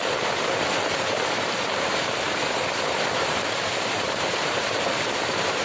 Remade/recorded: remade